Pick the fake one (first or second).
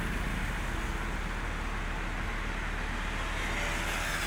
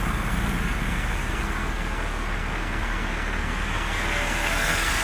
second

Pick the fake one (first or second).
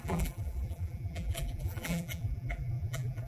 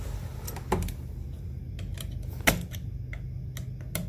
first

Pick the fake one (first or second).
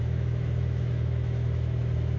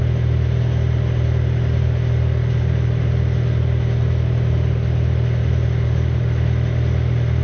first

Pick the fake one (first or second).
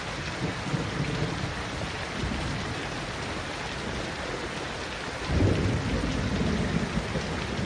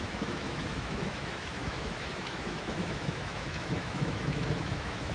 second